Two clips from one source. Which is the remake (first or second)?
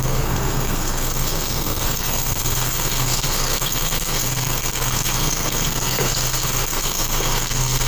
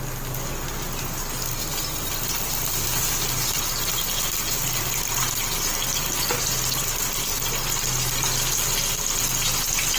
first